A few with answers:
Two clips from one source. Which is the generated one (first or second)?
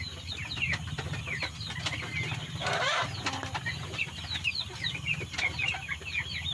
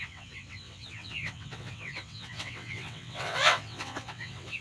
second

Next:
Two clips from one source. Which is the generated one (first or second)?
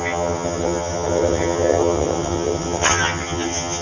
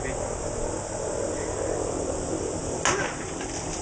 first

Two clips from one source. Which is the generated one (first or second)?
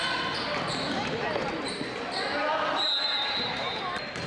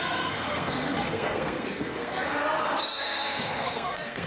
second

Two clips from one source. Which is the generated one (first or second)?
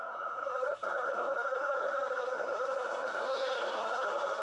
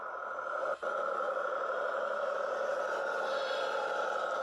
first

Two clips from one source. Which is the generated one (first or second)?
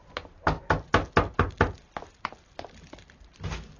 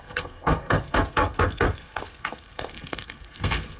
second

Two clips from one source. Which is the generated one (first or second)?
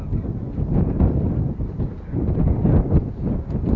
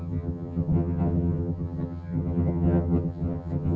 second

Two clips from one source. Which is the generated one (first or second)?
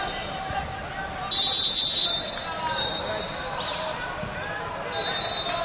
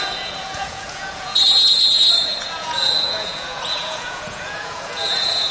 second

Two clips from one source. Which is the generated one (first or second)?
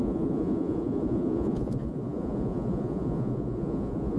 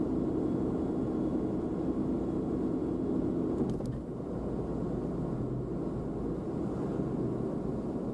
first